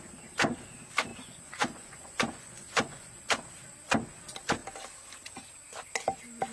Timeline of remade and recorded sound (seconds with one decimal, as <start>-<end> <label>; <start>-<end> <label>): 0.0-1.1 recorded; 1.1-3.2 remade; 3.2-6.5 recorded